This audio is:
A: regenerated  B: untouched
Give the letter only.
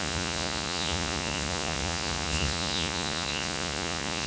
A